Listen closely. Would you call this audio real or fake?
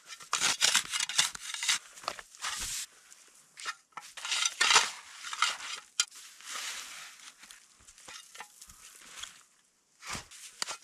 real